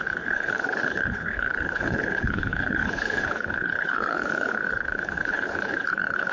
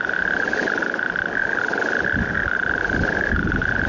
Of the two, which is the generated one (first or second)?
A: first